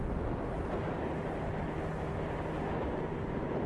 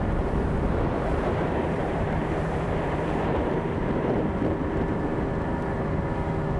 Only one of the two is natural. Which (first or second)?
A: first